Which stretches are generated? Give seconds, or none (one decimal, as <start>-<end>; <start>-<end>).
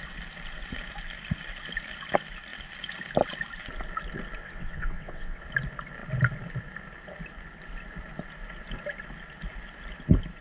4.4-5.4